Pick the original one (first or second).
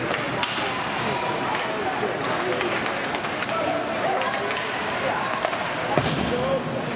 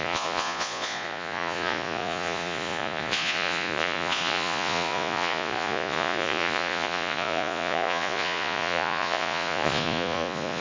first